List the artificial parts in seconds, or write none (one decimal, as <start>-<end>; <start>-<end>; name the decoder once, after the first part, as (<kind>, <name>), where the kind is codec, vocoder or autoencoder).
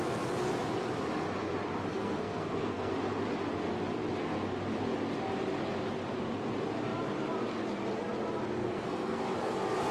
1.9-2.9 (codec, SNAC); 8.6-9.2